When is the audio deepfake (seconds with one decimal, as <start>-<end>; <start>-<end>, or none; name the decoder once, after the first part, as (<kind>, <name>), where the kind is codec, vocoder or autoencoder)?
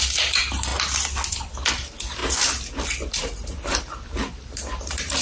0.0-0.7 (vocoder, BigVGAN v2); 1.7-2.2; 3.1-5.2